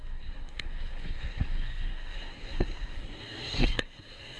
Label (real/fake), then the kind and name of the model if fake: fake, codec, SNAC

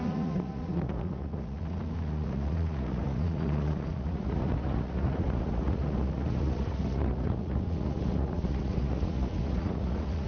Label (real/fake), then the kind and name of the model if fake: fake, vocoder, Vocos